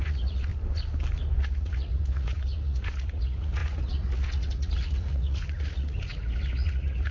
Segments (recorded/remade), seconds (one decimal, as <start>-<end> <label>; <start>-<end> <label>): 0.0-0.5 remade; 0.5-1.4 recorded; 1.4-7.1 remade